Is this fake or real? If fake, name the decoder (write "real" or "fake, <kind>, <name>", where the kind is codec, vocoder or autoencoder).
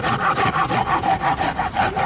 real